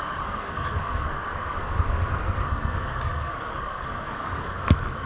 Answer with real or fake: fake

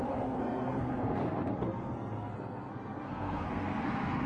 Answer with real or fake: fake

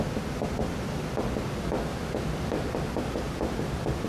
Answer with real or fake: real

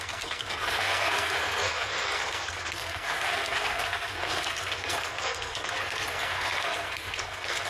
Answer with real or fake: fake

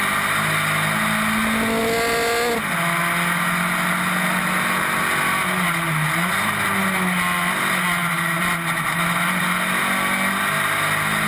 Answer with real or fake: real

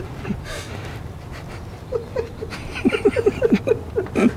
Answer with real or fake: real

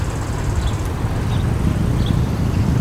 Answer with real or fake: real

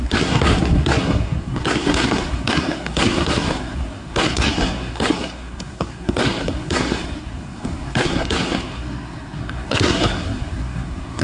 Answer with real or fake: fake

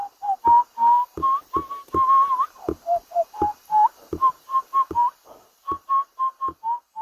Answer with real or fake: real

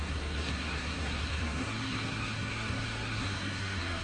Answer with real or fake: fake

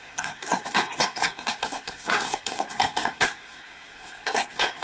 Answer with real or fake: fake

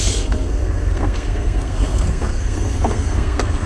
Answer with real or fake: fake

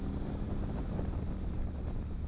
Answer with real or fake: real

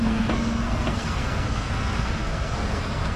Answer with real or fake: fake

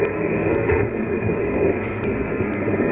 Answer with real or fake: fake